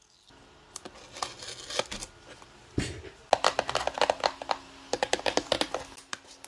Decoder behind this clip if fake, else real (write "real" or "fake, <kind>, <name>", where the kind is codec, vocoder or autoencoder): real